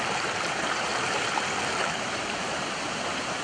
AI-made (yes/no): yes